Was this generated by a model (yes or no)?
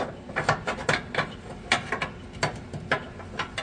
no